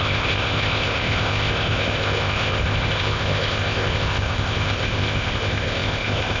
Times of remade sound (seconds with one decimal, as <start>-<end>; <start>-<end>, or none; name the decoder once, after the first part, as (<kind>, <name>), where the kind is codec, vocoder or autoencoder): 0.0-6.4 (codec, ZipCodec)